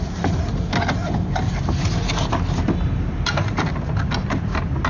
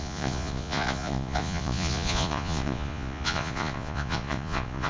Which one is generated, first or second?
second